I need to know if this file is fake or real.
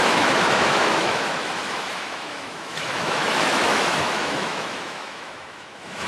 fake